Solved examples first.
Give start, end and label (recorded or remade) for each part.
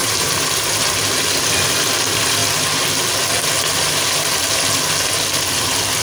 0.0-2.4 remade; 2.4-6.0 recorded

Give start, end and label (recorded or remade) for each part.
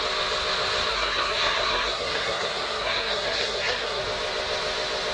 0.0-0.9 recorded; 0.9-4.0 remade; 4.0-5.1 recorded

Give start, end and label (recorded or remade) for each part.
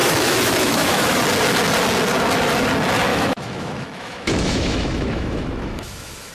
0.0-1.2 remade; 1.2-3.1 recorded; 3.1-6.3 remade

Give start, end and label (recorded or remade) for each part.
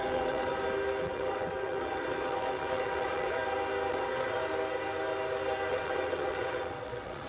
0.0-0.5 remade; 0.5-1.0 recorded; 1.0-3.4 remade; 3.4-3.9 recorded; 3.9-4.4 remade; 4.4-5.7 recorded; 5.7-7.3 remade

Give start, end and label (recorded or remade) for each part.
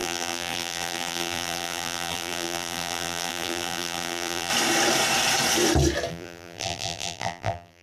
0.0-4.5 remade; 4.5-6.1 recorded; 6.1-7.8 remade